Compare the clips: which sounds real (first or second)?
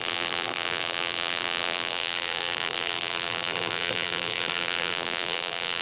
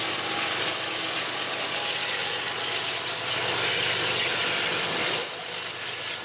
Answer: second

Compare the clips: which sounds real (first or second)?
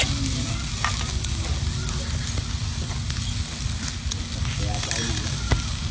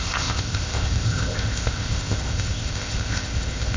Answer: first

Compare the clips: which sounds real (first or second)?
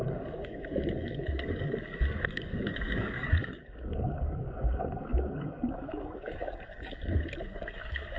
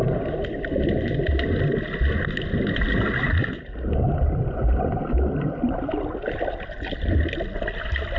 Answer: second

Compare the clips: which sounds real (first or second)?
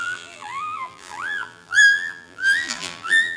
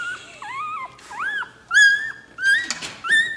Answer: second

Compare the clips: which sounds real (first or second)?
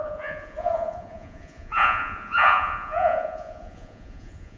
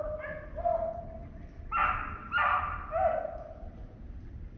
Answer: second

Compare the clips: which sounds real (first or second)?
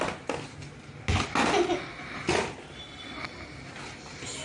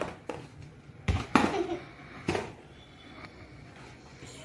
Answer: first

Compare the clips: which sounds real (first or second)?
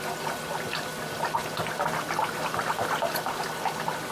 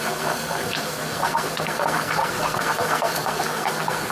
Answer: first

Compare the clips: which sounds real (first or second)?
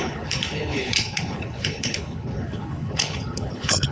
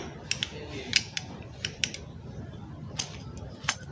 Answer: second